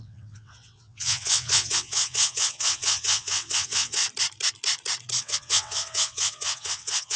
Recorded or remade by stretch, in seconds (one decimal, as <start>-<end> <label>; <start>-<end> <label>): 0.0-4.0 remade; 4.0-5.2 recorded; 5.2-7.2 remade